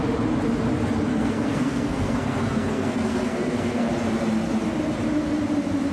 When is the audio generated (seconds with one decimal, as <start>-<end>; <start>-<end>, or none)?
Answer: 1.1-3.9